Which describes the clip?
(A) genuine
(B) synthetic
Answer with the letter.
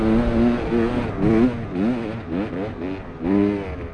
A